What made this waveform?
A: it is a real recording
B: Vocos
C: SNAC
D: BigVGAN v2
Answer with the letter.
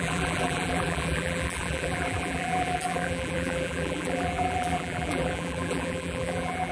D